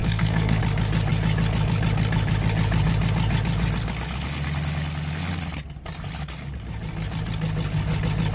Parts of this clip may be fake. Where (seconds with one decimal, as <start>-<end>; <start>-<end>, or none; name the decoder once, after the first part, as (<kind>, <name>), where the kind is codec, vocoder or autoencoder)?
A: 0.0-0.6 (codec, SNAC)